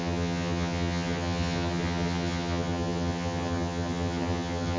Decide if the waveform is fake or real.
fake